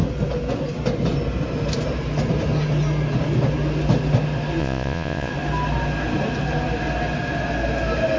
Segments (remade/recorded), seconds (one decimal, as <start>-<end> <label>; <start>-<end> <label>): 0.0-4.6 recorded; 4.6-5.3 remade; 5.3-8.2 recorded